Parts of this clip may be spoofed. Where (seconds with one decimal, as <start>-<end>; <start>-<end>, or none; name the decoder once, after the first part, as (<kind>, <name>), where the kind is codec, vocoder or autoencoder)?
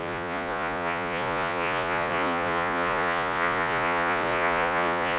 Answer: 0.0-5.2 (vocoder, Vocos)